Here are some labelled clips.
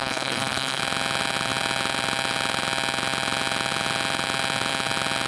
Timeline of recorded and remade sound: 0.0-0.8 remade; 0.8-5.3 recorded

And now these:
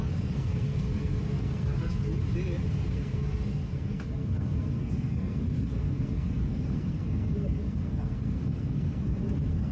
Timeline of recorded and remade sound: 0.0-2.1 remade; 2.1-2.7 recorded; 2.7-9.7 remade

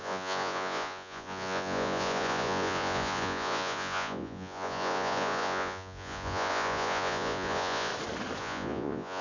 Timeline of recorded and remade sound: 0.0-7.9 remade; 7.9-8.4 recorded; 8.4-9.2 remade

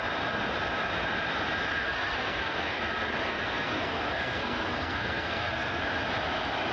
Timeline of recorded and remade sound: 0.0-1.8 recorded; 1.8-2.8 remade; 2.8-3.3 recorded; 3.3-5.8 remade; 5.8-6.7 recorded

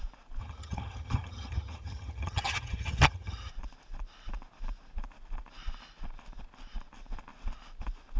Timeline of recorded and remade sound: 0.0-0.4 recorded; 0.4-3.5 remade; 3.5-8.2 recorded

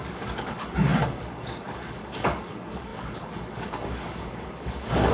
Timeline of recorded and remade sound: 0.0-5.1 remade

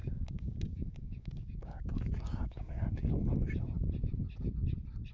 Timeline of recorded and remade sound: 0.0-3.1 remade; 3.1-5.1 recorded

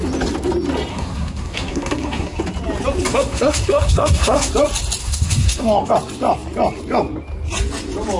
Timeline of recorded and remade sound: 0.0-0.9 recorded; 0.9-2.4 remade; 2.4-3.1 recorded; 3.1-4.5 remade; 4.5-5.0 recorded; 5.0-5.9 remade; 5.9-8.2 recorded